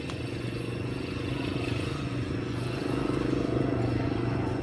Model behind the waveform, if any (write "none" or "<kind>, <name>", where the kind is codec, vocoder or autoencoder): vocoder, Vocos